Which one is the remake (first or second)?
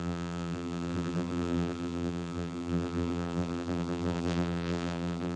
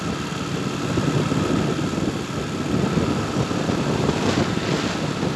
first